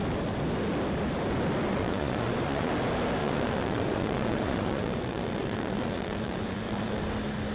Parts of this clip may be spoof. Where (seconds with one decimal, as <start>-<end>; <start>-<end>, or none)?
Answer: 1.7-2.7; 3.2-7.0